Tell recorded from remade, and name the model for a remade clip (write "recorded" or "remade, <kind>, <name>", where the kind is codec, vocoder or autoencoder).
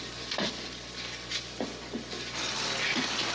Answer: recorded